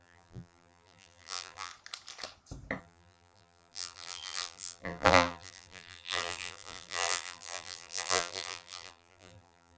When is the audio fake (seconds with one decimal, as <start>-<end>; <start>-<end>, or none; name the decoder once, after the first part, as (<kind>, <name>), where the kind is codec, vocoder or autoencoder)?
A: 0.0-1.7 (vocoder, BigVGAN v2); 2.8-9.8